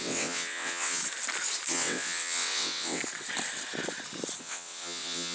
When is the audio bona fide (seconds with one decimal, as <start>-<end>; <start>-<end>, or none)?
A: 1.0-1.7; 3.0-4.4